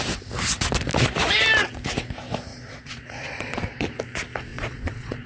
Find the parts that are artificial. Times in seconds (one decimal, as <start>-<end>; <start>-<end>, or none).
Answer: 2.5-4.0; 4.5-5.3